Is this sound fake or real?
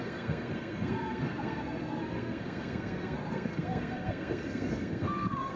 fake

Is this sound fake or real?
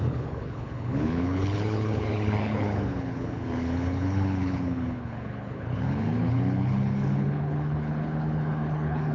fake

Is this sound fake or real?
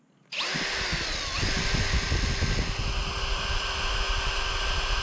real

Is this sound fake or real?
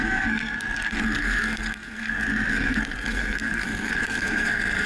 fake